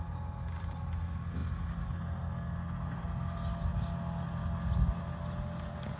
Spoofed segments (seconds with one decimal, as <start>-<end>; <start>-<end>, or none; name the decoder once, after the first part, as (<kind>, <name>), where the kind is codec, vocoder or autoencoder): none